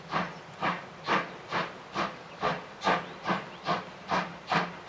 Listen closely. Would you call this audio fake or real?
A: real